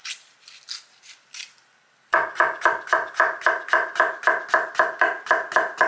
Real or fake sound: real